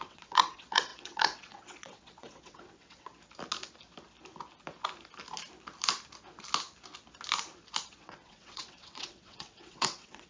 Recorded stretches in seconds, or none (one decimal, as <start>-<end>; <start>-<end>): 3.1-7.8